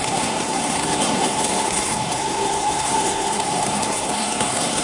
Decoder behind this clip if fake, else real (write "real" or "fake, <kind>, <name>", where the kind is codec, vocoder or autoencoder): fake, codec, SNAC